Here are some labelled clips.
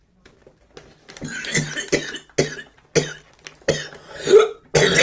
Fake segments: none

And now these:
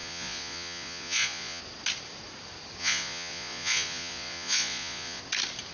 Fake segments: 0.0-1.6 (vocoder, Vocos); 2.8-5.2

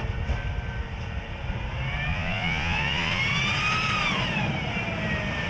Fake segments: 2.1-3.2 (vocoder, Vocos)